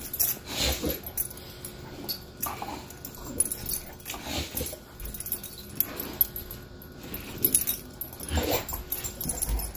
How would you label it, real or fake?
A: real